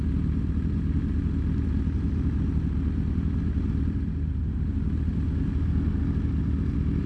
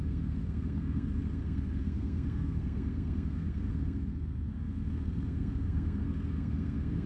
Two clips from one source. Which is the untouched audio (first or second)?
first